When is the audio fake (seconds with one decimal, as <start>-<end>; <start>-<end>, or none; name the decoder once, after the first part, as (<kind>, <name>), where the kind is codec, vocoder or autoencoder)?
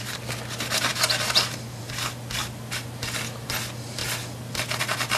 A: none